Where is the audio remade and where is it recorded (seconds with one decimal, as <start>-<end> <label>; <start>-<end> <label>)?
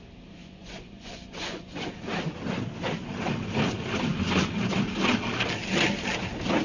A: 0.0-0.4 recorded; 0.4-1.9 remade; 1.9-6.6 recorded